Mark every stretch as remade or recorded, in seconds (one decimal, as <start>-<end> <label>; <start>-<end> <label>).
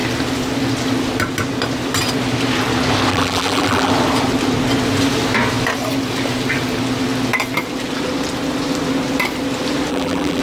0.0-3.1 recorded; 3.1-3.9 remade; 3.9-9.9 recorded; 9.9-10.4 remade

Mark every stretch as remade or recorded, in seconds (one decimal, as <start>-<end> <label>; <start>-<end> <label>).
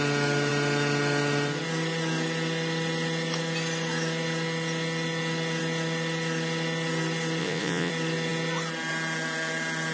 0.0-7.4 recorded; 7.4-7.9 remade; 7.9-9.9 recorded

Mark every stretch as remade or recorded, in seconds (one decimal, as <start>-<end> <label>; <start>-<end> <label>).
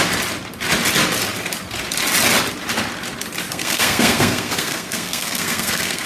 0.0-3.5 recorded; 3.5-6.1 remade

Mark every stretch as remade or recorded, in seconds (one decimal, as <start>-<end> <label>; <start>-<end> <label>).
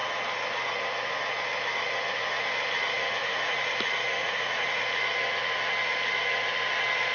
0.0-3.2 recorded; 3.2-3.7 remade; 3.7-4.2 recorded; 4.2-4.8 remade; 4.8-7.1 recorded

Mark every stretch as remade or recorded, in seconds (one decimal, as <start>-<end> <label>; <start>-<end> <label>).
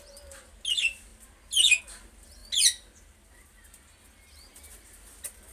0.0-5.5 recorded